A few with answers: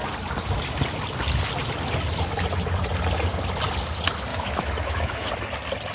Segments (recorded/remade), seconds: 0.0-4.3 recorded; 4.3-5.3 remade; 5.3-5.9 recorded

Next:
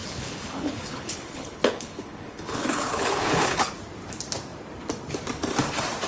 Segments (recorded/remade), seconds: 0.0-3.7 remade; 3.7-6.1 recorded

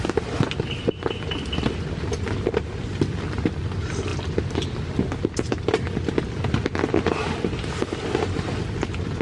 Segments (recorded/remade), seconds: 0.0-9.2 recorded

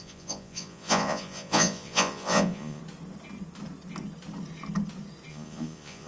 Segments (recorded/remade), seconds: 0.0-2.8 remade; 2.8-5.3 recorded; 5.3-6.1 remade